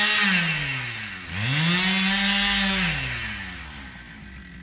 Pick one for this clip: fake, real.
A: real